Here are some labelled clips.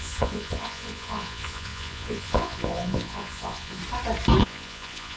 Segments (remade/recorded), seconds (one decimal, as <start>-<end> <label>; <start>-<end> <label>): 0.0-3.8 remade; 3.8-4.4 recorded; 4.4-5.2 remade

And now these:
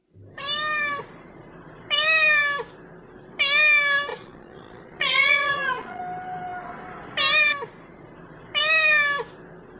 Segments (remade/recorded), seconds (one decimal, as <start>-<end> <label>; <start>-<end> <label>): 0.0-4.1 recorded; 4.1-6.0 remade; 6.0-9.8 recorded

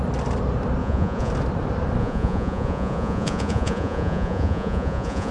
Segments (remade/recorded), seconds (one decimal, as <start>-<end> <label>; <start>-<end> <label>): 0.0-0.8 recorded; 0.8-1.3 remade; 1.3-2.0 recorded; 2.0-5.3 remade